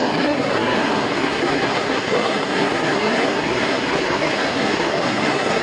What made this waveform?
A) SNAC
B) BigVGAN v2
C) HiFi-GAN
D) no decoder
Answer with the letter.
A